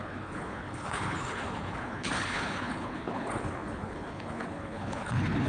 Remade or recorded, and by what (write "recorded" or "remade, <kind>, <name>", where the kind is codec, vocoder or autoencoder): remade, codec, HILCodec